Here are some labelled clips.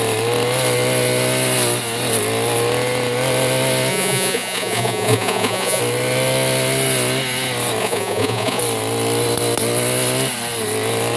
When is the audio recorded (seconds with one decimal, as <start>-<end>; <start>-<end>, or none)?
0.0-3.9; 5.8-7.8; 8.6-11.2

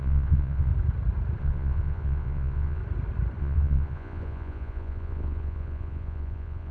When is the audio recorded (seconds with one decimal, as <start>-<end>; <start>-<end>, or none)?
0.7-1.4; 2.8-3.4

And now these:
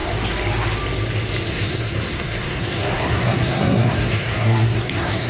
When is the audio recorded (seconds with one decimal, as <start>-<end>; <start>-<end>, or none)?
0.0-1.5